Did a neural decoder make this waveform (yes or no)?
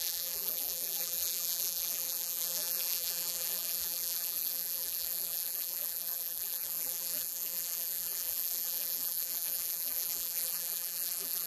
yes